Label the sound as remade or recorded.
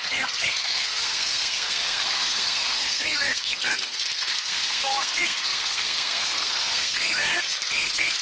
remade